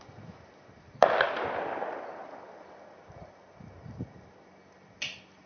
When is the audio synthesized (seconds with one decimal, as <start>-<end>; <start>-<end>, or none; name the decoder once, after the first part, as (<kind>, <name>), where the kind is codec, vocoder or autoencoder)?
none